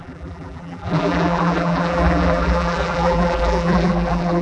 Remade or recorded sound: remade